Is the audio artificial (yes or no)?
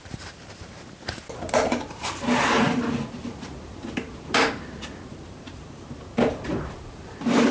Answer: no